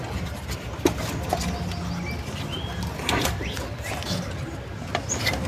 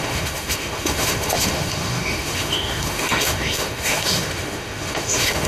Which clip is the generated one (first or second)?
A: second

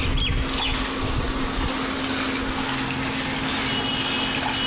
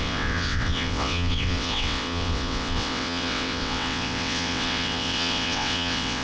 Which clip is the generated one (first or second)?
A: second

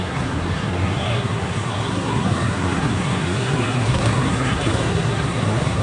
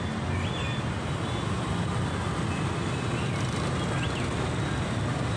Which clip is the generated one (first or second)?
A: first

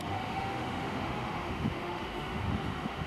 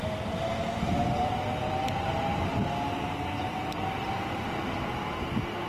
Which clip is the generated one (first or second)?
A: first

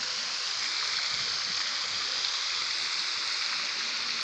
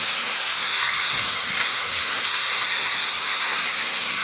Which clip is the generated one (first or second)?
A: second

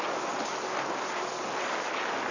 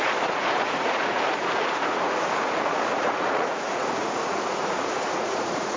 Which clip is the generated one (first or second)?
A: second